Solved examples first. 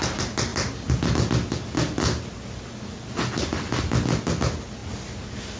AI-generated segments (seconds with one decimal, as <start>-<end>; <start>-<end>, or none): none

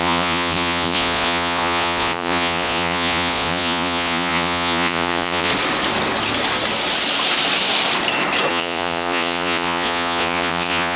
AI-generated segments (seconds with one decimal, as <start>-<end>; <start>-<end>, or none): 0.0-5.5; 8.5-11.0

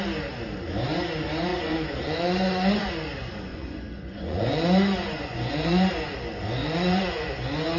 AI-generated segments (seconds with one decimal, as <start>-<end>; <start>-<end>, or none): 1.5-2.9; 3.5-5.9; 6.6-7.3

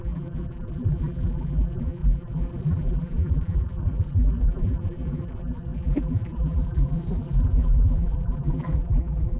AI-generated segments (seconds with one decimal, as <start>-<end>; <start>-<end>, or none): 0.0-9.4